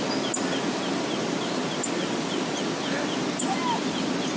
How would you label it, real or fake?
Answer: real